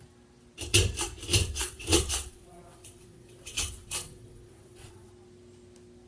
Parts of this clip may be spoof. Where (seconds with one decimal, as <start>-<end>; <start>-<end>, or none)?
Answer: 1.4-5.1